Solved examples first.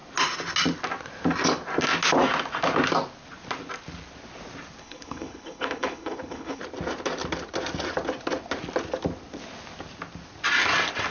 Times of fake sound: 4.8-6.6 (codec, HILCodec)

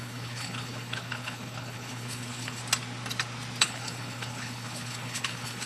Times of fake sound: 0.0-2.6 (codec, HILCodec); 3.6-5.7

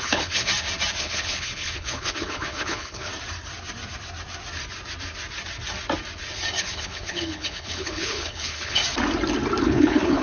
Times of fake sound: 0.0-0.5 (codec, HILCodec); 1.0-3.1; 6.6-8.8; 9.6-10.2

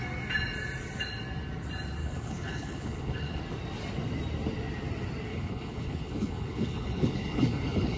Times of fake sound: 2.0-3.4 (codec, HILCodec); 5.3-8.0

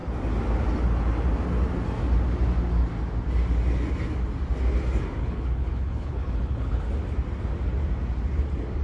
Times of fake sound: 5.2-6.8 (codec, HILCodec)